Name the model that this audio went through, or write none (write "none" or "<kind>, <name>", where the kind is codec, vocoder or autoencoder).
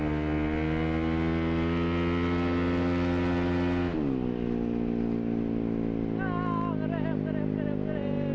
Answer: none